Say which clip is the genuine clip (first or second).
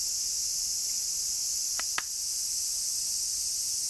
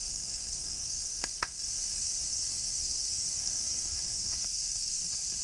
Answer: first